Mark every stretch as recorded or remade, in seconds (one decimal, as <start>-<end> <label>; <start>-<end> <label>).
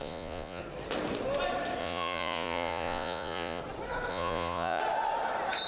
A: 0.0-0.6 remade; 0.6-1.8 recorded; 1.8-3.6 remade; 3.6-4.1 recorded; 4.1-4.8 remade; 4.8-5.7 recorded